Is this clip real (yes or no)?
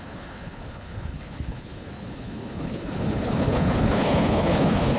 no